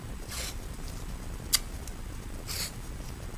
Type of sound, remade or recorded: recorded